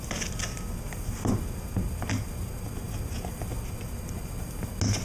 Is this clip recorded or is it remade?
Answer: recorded